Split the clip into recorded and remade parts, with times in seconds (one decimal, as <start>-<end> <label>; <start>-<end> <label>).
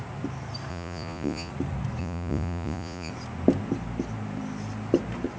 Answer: 0.0-0.7 recorded; 0.7-1.5 remade; 1.5-2.0 recorded; 2.0-3.1 remade; 3.1-5.4 recorded